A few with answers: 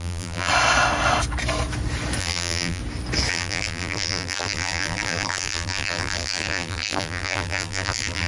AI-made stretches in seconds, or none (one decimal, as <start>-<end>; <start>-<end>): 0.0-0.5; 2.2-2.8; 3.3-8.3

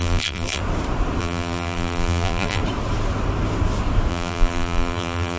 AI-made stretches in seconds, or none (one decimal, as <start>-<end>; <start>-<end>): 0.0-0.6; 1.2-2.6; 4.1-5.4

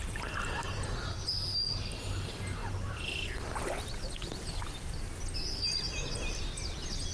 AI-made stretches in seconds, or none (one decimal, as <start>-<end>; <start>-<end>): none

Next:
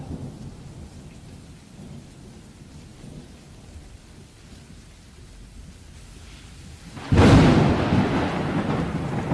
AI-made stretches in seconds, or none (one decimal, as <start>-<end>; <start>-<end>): none

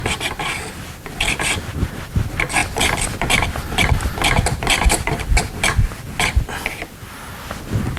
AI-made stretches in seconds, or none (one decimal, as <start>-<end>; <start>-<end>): 2.6-5.2